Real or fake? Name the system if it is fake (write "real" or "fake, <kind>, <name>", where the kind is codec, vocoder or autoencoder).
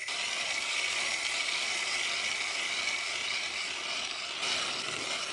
real